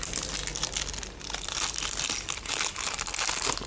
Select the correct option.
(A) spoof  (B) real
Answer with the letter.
B